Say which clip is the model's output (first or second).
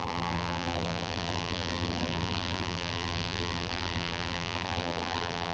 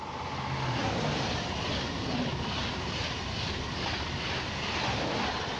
first